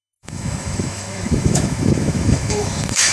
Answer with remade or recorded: remade